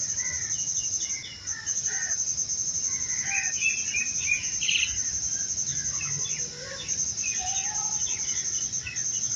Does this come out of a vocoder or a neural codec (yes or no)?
no